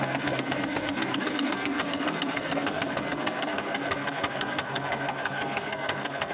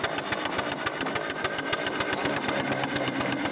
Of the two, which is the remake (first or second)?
first